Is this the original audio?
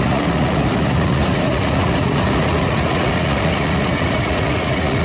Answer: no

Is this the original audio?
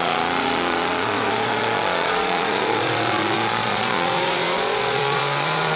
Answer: no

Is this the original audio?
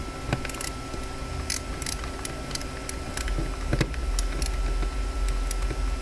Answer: yes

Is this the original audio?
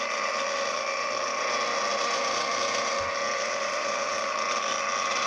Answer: yes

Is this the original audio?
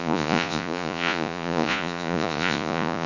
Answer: no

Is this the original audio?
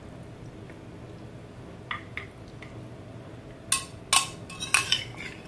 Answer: yes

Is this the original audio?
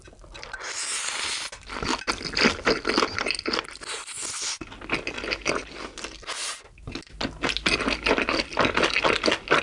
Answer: yes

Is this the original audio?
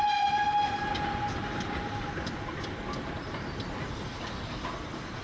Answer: yes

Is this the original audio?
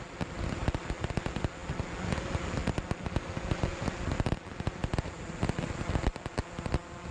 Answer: yes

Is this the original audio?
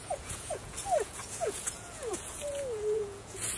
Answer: no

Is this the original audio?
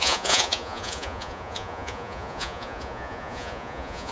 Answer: no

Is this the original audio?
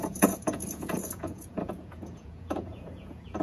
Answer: no